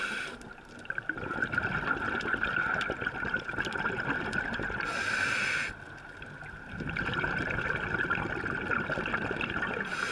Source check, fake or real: real